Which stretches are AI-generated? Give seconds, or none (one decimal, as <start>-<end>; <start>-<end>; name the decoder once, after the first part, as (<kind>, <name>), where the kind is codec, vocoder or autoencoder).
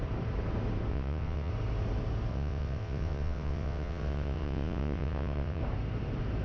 0.9-1.5 (vocoder, WaveNeXt); 2.3-5.6